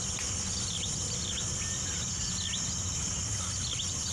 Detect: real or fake real